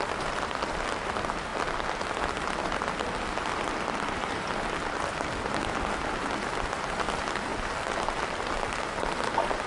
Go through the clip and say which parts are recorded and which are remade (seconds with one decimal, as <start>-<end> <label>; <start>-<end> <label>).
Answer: 0.0-9.7 recorded